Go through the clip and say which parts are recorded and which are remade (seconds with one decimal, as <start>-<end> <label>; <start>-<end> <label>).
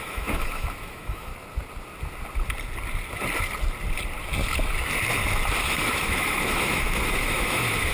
0.0-1.3 remade; 1.3-5.6 recorded; 5.6-7.9 remade